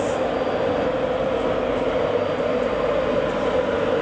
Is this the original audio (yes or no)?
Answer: yes